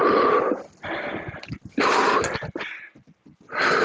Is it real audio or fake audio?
real